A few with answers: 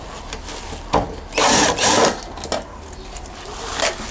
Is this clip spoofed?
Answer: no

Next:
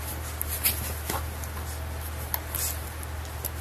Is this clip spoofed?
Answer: no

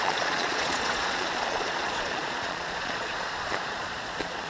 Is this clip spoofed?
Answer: yes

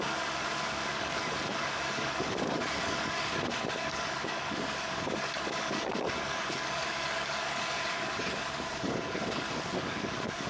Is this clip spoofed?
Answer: yes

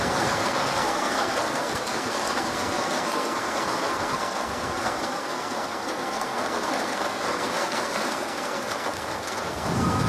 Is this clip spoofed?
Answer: yes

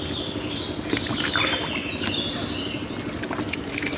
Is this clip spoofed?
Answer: no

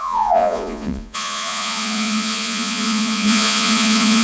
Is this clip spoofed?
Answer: yes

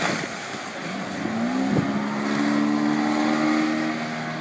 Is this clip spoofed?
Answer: no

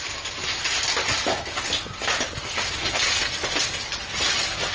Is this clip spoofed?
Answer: no